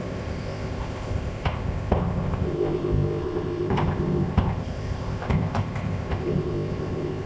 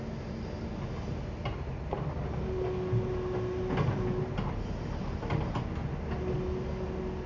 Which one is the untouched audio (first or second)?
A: second